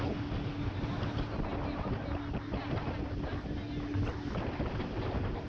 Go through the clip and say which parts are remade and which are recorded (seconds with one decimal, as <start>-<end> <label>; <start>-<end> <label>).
0.0-5.5 recorded